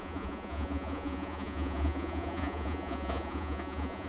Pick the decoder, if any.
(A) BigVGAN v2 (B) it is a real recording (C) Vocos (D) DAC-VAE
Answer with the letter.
C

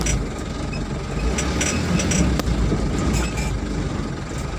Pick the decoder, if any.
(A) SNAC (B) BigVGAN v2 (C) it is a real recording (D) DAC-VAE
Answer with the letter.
C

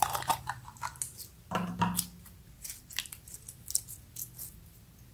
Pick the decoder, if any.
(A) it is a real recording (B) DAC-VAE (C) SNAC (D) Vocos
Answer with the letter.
A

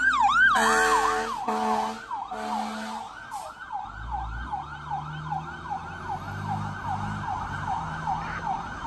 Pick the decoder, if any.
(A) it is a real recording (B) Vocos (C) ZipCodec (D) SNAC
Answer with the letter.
A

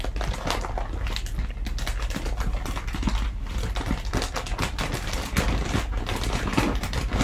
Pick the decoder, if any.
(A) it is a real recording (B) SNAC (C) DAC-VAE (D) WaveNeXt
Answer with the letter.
A